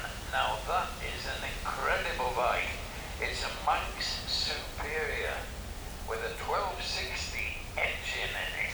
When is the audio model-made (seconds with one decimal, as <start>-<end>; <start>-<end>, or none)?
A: 1.8-2.9; 7.8-8.7